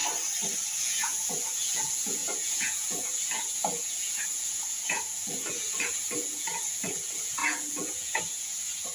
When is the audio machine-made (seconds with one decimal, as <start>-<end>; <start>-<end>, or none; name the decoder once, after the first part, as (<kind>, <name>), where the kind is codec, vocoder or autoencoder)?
0.8-8.9 (vocoder, Vocos)